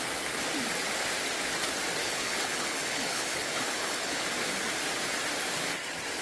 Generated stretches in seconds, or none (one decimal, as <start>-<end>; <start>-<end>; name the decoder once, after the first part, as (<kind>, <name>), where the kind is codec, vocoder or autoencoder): 2.0-4.2 (codec, HILCodec)